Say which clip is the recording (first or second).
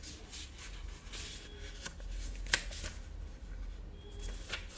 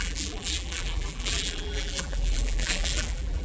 first